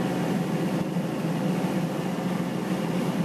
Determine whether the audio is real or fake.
real